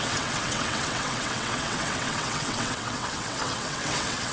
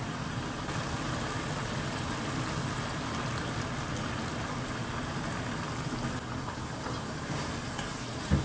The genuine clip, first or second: second